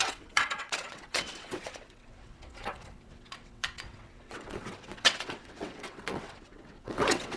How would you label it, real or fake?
fake